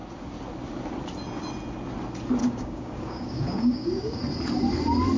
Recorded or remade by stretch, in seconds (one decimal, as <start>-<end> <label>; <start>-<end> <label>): 0.0-2.4 recorded; 2.4-4.2 remade; 4.2-5.2 recorded